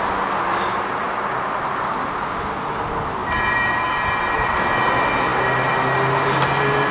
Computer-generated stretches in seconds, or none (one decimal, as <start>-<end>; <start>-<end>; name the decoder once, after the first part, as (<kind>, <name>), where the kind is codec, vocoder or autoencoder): none